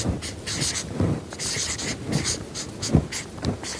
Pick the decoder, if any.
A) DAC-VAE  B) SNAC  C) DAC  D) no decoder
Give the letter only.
D